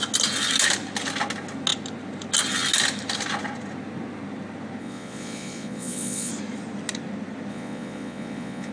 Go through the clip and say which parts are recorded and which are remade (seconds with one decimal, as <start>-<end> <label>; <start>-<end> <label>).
0.0-4.8 recorded; 4.8-6.3 remade; 6.3-7.5 recorded; 7.5-8.7 remade